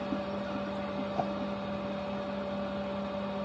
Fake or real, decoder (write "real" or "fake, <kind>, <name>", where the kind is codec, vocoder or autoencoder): real